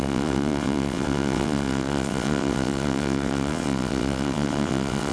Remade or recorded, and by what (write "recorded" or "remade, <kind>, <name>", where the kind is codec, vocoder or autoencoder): remade, vocoder, WaveNeXt